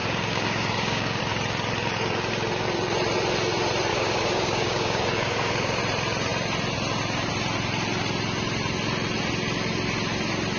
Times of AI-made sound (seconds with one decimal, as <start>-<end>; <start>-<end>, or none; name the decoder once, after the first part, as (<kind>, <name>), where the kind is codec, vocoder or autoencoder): 0.0-1.2 (codec, DAC); 3.9-5.8

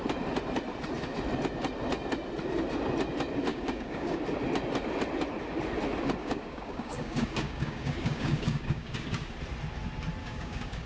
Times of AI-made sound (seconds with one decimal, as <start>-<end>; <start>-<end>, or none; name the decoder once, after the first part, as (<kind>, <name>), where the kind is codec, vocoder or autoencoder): 3.5-4.2 (codec, DAC); 6.2-9.3; 10.2-10.9

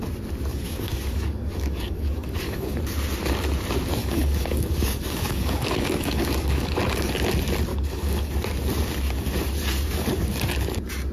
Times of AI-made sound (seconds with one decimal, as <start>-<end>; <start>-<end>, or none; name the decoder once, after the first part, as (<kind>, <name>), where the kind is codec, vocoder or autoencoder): 0.5-2.8 (codec, DAC); 4.0-6.8; 7.7-8.3